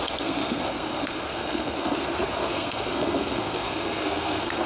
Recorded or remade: remade